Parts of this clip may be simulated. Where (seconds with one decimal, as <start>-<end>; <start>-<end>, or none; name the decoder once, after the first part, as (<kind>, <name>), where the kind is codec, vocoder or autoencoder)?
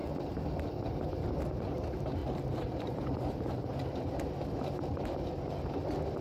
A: 2.2-4.2 (vocoder, BigVGAN v2)